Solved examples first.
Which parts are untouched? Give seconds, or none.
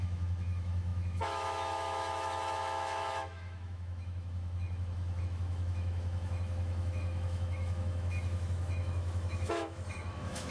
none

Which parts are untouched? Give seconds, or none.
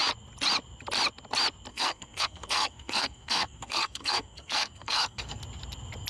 0.0-1.7; 5.4-6.1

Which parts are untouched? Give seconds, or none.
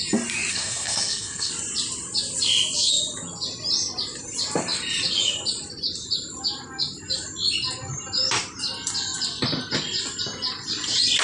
0.0-0.5; 1.5-11.2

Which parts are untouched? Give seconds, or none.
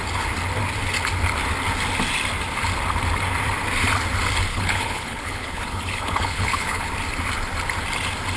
0.0-4.5; 6.9-8.4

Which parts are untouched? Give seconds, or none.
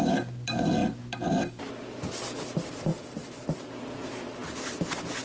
0.0-5.2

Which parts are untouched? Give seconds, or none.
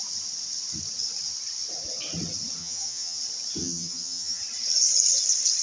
0.0-2.6; 3.2-3.6; 4.4-5.6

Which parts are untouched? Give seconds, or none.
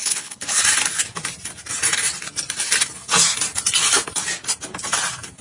0.6-5.4